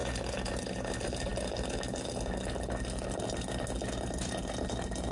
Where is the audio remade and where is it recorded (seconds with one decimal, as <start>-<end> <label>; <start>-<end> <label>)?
0.0-5.1 recorded